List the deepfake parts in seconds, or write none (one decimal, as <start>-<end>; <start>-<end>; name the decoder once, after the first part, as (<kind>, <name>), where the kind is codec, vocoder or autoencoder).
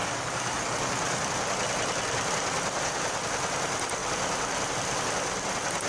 0.0-0.8 (codec, DAC)